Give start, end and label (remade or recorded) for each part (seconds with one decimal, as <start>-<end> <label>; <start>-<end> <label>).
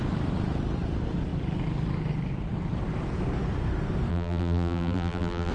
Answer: 0.0-4.1 recorded; 4.1-5.5 remade